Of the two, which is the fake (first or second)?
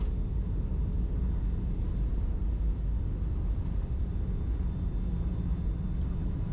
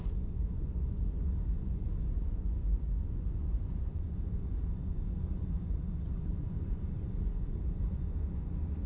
second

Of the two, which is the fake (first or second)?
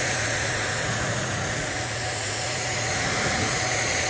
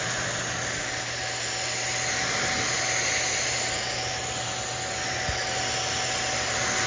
first